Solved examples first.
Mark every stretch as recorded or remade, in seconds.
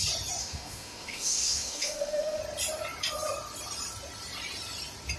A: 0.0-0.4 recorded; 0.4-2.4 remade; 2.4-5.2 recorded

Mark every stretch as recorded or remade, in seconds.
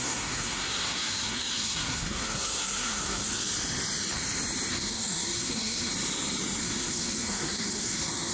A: 0.0-3.3 remade; 3.3-4.7 recorded; 4.7-5.9 remade; 5.9-6.6 recorded; 6.6-8.3 remade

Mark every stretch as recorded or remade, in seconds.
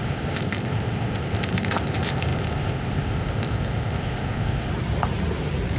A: 0.0-4.7 remade; 4.7-5.8 recorded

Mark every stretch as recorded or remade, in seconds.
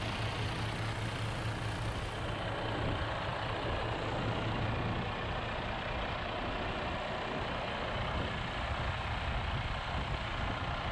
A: 0.0-3.3 recorded; 3.3-3.8 remade; 3.8-10.9 recorded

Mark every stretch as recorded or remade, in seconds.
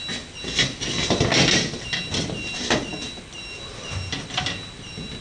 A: 0.0-5.2 recorded